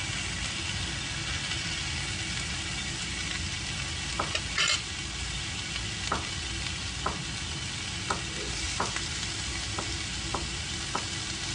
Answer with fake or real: real